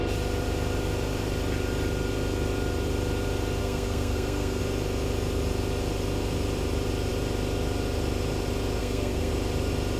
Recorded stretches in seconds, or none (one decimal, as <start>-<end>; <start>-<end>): 0.0-3.6; 4.6-8.8; 9.3-10.0